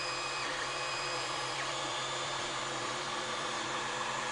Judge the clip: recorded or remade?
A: remade